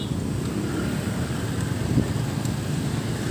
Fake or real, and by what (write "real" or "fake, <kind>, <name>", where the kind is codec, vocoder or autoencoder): real